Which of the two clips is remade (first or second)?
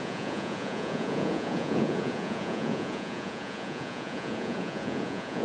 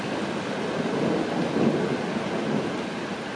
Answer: first